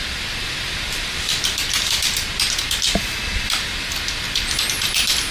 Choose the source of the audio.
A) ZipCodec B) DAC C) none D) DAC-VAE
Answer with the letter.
C